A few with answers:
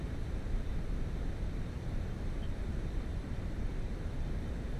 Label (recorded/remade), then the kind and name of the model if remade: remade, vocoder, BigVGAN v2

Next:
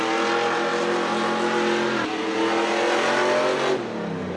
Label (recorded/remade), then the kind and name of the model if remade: recorded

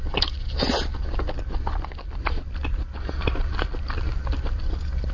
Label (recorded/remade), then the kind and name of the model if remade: recorded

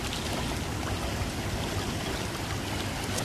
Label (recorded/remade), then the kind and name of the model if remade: recorded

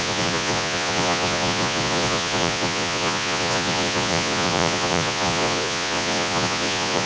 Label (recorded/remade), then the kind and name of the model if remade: remade, vocoder, Vocos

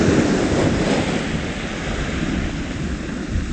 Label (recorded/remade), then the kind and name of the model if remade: recorded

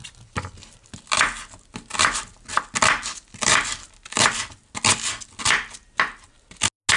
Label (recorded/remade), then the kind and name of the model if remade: recorded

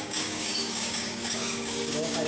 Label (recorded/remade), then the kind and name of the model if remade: remade, codec, DAC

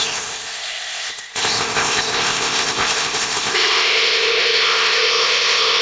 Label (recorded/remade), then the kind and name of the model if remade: remade, codec, ZipCodec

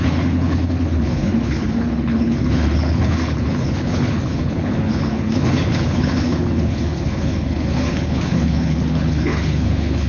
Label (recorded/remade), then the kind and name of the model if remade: remade, codec, HILCodec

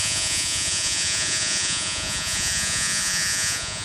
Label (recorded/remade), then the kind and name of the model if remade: remade, vocoder, Vocos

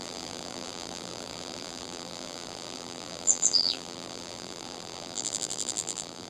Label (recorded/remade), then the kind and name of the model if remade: remade, vocoder, BigVGAN v2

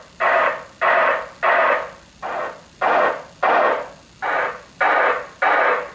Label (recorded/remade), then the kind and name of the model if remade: recorded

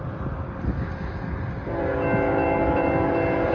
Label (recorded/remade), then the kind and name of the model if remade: recorded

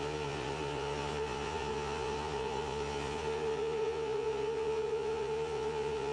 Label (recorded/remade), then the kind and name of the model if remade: remade, vocoder, Vocos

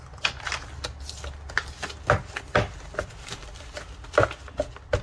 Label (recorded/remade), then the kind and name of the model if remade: recorded